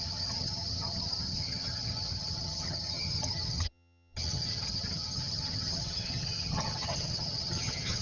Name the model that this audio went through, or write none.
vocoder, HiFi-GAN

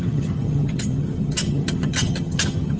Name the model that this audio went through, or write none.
vocoder, HiFi-GAN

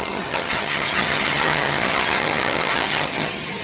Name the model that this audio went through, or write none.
vocoder, HiFi-GAN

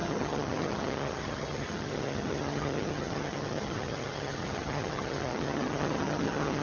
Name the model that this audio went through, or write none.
vocoder, HiFi-GAN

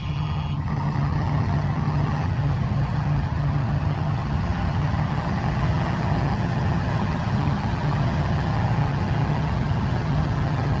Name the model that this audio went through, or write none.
vocoder, HiFi-GAN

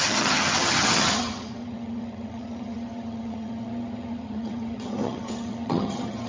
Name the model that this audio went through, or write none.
vocoder, HiFi-GAN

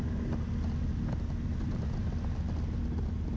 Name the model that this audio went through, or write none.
none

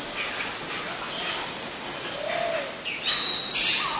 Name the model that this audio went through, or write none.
none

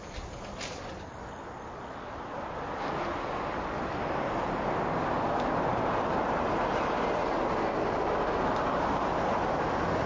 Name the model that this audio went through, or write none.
none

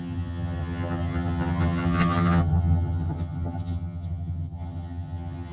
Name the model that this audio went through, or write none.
vocoder, HiFi-GAN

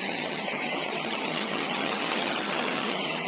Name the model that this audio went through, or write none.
vocoder, HiFi-GAN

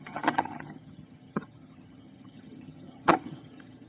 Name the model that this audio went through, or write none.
vocoder, HiFi-GAN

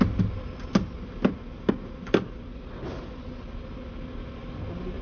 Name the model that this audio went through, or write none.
none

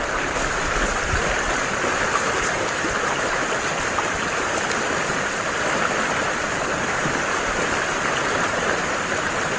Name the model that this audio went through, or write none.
none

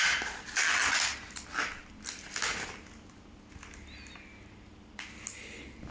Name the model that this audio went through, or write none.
none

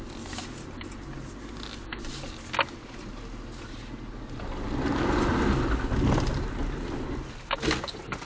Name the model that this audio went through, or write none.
none